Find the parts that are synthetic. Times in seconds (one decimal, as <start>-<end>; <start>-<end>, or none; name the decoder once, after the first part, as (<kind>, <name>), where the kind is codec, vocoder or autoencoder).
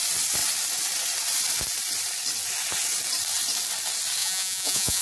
4.2-5.0 (vocoder, Vocos)